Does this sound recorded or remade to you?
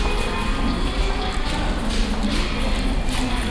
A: recorded